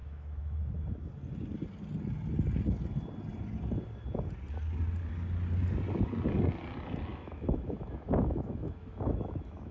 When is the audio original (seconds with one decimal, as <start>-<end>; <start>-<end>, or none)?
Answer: 0.6-7.1